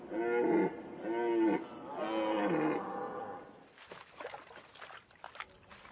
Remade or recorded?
recorded